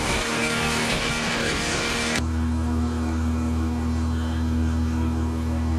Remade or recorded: remade